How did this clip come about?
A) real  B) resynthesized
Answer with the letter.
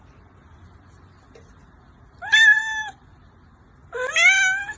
A